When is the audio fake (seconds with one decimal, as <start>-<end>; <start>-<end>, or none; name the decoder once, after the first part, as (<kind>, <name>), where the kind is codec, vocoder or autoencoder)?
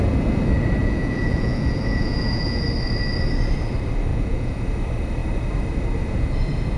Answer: 0.8-2.6 (vocoder, Vocos); 4.1-4.6